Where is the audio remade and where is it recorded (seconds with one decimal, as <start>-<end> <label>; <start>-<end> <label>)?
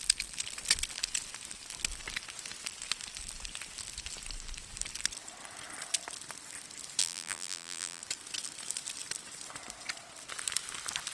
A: 0.0-7.0 recorded; 7.0-8.0 remade; 8.0-11.1 recorded